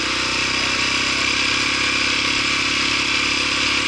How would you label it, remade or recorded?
recorded